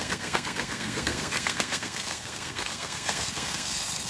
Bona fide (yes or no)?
no